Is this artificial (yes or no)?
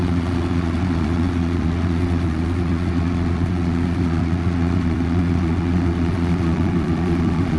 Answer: yes